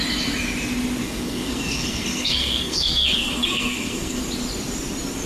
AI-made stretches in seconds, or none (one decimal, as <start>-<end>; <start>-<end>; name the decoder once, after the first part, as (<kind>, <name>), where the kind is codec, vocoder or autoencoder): 1.0-4.2 (codec, SNAC)